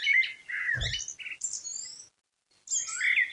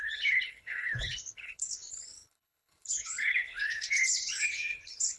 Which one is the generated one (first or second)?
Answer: second